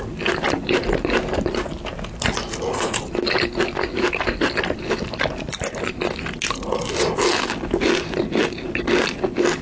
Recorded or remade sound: recorded